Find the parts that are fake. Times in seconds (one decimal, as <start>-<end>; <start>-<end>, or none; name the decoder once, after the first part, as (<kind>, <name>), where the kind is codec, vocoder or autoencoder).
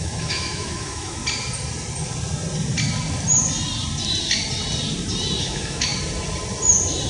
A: 0.0-1.2 (autoencoder, DAC-VAE); 5.4-5.9